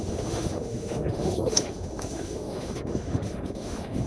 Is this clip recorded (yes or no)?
no